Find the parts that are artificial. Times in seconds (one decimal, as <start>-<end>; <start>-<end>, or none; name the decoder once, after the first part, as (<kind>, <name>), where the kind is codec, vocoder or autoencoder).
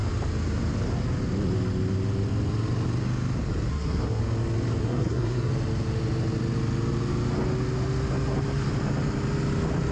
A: 3.7-4.2 (codec, SNAC); 4.8-5.5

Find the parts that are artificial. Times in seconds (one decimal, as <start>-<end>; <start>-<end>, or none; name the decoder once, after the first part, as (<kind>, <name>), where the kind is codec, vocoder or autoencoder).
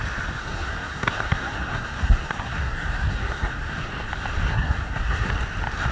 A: 0.4-3.9 (codec, SNAC); 4.5-5.3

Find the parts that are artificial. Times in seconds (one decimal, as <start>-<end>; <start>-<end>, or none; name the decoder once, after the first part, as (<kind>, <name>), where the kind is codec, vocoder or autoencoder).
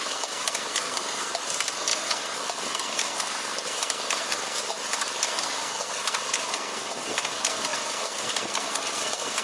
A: 0.0-9.4 (codec, SNAC)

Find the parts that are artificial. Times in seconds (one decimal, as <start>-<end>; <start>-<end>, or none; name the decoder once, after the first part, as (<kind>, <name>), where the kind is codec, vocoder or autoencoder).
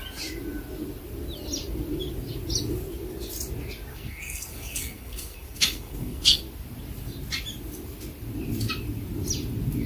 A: 3.9-6.4 (codec, SNAC)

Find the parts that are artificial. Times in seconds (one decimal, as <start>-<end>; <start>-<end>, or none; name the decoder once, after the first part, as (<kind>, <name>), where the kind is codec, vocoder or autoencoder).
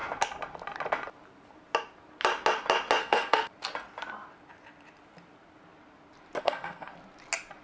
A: 3.0-3.5 (codec, SNAC); 6.4-6.9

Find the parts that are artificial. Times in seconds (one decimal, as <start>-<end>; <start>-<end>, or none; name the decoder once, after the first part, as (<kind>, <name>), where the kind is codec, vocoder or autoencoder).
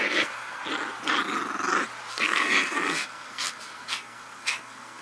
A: 0.0-0.6 (codec, SNAC); 2.1-5.0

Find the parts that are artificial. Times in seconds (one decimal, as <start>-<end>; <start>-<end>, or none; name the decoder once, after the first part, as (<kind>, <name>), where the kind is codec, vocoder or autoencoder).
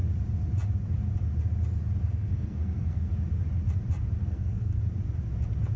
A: 2.0-3.1 (codec, SNAC); 4.2-4.8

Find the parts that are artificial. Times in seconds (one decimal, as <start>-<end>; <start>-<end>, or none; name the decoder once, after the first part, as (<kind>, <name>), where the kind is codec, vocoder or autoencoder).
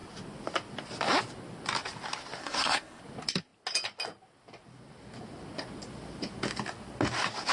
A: 2.4-3.0 (codec, SNAC)